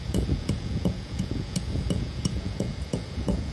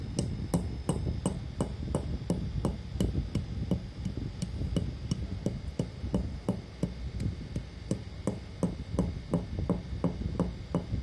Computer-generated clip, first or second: first